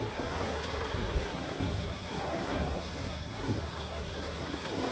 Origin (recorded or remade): remade